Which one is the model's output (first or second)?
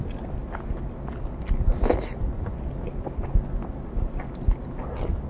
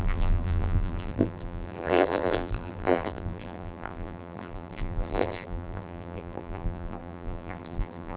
second